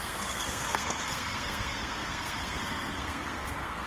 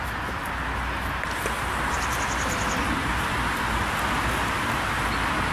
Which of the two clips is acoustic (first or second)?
second